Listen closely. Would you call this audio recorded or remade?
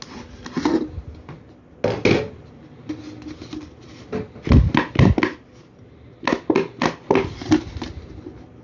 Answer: recorded